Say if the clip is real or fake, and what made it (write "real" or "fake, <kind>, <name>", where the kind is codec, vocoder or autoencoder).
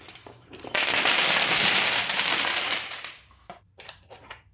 fake, vocoder, BigVGAN v2